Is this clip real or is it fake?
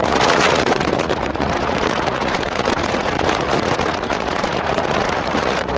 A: fake